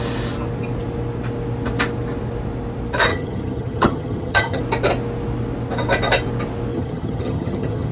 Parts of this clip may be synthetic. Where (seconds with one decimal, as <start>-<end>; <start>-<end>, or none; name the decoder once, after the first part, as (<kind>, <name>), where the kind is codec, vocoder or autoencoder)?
3.1-4.6 (vocoder, HiFi-GAN); 6.7-7.9